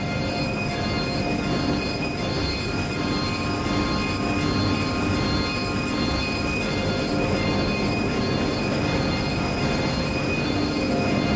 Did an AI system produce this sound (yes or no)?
no